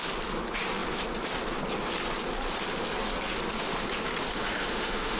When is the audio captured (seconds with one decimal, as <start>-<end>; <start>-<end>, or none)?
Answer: 0.0-4.3